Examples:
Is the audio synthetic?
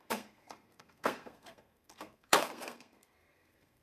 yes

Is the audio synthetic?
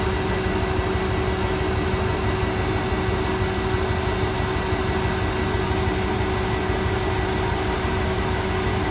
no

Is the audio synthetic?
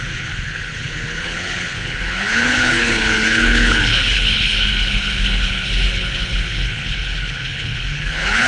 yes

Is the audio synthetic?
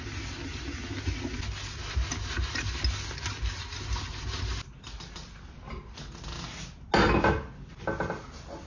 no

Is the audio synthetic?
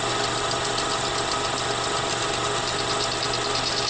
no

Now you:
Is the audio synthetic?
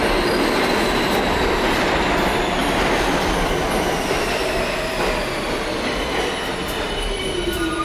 no